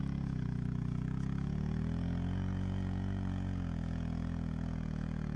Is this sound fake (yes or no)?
yes